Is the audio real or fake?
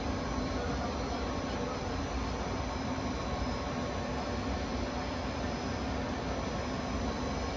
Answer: real